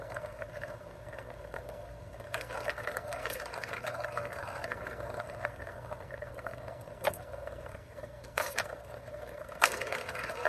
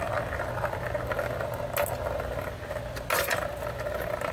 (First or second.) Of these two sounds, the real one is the second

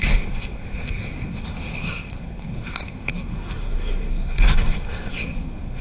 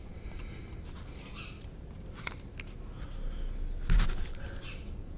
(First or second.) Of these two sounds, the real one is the second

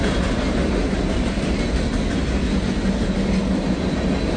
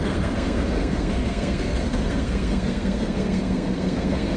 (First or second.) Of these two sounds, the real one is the first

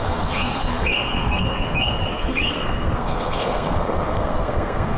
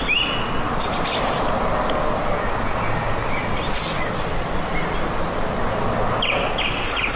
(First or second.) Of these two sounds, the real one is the second